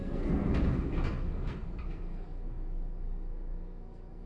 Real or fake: fake